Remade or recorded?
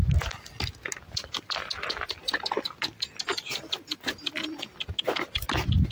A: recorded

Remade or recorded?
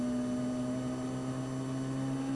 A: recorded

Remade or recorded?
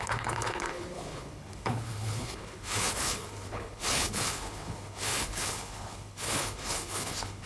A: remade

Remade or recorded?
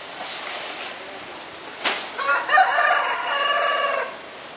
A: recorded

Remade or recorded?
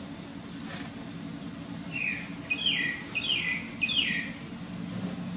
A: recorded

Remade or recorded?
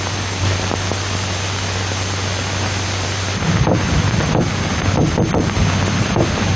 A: recorded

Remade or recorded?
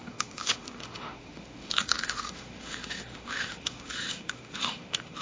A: remade